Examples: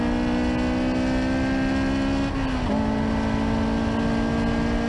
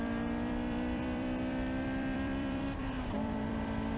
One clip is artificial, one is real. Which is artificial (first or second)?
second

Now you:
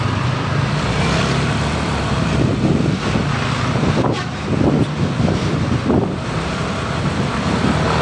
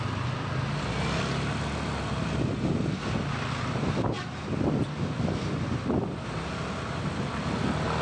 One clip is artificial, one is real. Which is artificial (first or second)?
first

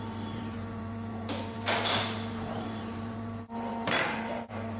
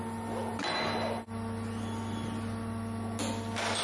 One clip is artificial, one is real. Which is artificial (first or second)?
first